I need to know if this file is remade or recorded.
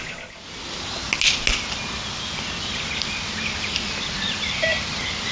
recorded